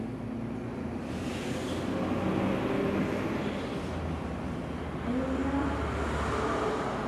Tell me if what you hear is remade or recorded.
recorded